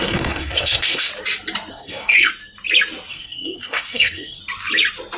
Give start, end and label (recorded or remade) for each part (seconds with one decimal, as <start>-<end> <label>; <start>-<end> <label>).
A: 0.0-1.1 remade; 1.1-1.7 recorded; 1.7-2.3 remade; 2.3-3.1 recorded; 3.1-4.4 remade; 4.4-5.2 recorded